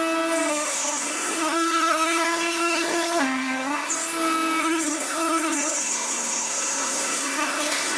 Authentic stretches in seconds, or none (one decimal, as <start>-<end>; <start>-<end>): 0.0-0.5; 3.9-4.6